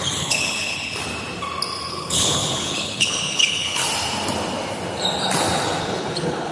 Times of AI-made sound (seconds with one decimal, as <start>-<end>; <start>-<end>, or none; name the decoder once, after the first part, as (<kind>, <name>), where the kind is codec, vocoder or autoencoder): 0.0-1.0 (codec, HILCodec); 1.9-3.8; 5.8-6.5